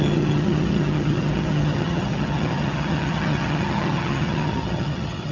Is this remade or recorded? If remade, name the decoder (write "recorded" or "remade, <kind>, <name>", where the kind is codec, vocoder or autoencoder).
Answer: remade, vocoder, HiFi-GAN